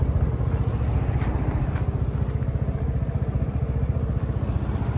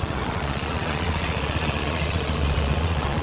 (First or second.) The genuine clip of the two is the first